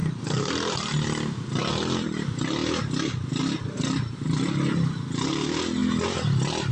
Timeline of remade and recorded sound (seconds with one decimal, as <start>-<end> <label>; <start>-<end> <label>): 0.0-0.5 remade; 0.5-6.7 recorded